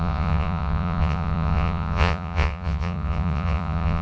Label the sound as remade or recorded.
remade